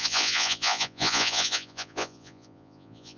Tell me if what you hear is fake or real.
fake